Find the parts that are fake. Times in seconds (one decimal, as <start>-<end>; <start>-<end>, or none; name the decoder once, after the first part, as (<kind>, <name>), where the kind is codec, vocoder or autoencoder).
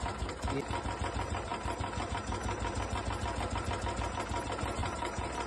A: 4.8-5.5 (vocoder, BigVGAN v2)